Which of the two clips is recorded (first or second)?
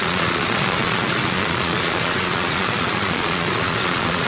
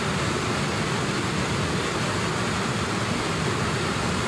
second